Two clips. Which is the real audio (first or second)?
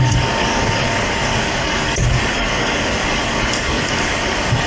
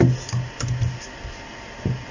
second